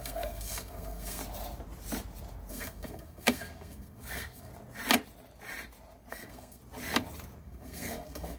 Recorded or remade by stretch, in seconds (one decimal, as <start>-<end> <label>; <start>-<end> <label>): 0.0-1.2 remade; 1.2-2.5 recorded; 2.5-4.5 remade; 4.5-6.1 recorded; 6.1-6.6 remade; 6.6-7.4 recorded; 7.4-8.4 remade